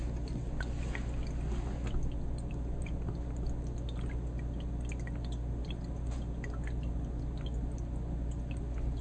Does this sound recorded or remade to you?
recorded